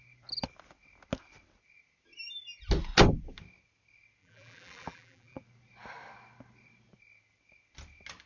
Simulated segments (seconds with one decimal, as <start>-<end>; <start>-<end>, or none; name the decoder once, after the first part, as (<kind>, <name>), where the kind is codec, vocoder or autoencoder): 4.2-5.4 (vocoder, BigVGAN v2)